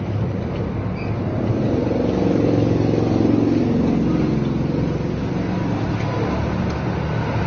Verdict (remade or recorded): recorded